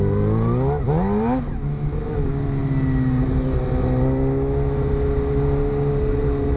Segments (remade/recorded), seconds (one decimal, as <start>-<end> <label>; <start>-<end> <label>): 0.0-6.6 recorded